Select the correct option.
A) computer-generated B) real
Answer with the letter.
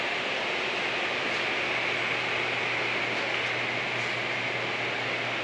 B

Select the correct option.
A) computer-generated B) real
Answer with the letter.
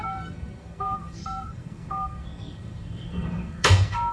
A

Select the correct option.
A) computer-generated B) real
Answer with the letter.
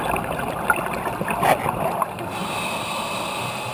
B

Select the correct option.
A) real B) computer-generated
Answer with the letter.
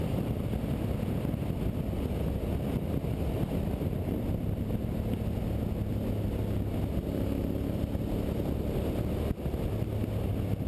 A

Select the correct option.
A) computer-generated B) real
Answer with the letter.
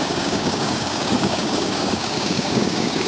A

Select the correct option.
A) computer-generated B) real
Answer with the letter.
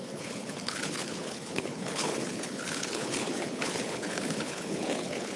A